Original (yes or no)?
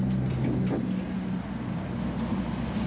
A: yes